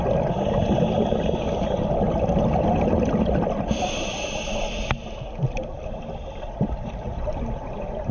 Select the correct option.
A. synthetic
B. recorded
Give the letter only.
B